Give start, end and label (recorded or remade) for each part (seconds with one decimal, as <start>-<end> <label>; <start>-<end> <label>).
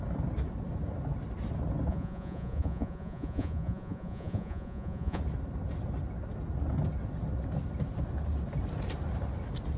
0.0-1.9 recorded; 1.9-5.2 remade; 5.2-9.8 recorded